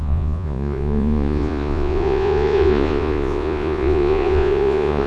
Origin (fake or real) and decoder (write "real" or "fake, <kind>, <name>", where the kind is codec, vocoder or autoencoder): fake, vocoder, Vocos